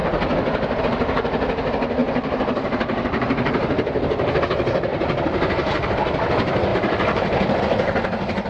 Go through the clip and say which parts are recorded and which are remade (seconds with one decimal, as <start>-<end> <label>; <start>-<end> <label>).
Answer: 0.0-2.0 recorded; 2.0-4.4 remade; 4.4-6.7 recorded; 6.7-7.6 remade; 7.6-8.5 recorded